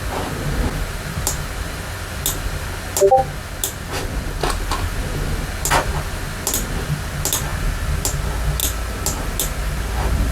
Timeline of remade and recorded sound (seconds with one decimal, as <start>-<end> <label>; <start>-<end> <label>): 0.0-10.3 recorded